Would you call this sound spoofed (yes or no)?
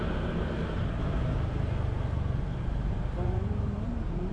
yes